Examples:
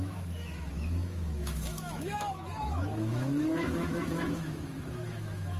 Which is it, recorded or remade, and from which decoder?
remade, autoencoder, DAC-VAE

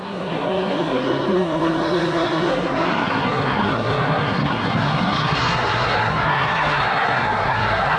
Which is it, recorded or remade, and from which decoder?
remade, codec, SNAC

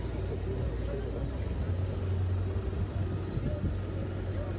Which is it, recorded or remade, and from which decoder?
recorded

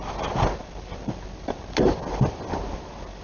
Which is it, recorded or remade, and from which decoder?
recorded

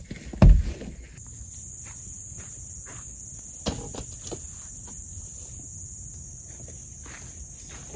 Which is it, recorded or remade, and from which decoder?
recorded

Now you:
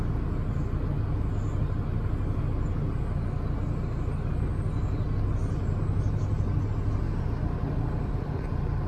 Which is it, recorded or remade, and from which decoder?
recorded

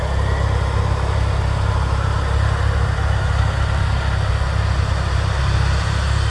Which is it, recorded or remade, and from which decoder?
recorded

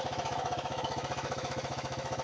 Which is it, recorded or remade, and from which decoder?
remade, autoencoder, DAC-VAE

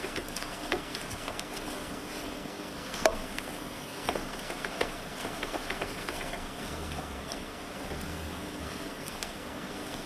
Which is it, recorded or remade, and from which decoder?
remade, codec, SNAC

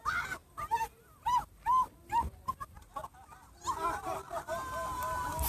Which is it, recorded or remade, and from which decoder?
remade, vocoder, BigVGAN v2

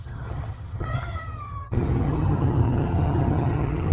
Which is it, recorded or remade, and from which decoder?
remade, vocoder, HiFi-GAN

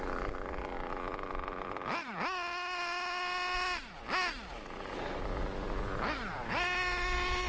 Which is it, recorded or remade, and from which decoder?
recorded